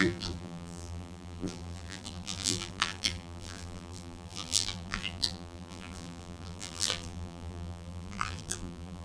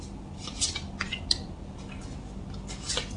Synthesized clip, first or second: first